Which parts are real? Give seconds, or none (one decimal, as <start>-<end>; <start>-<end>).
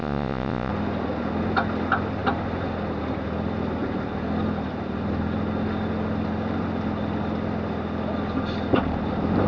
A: 0.7-9.5